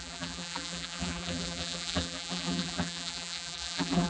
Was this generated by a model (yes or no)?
yes